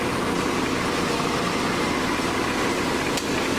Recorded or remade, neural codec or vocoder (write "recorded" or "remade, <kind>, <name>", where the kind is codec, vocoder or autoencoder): recorded